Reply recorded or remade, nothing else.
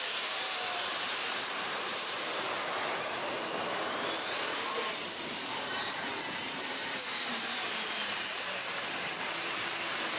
remade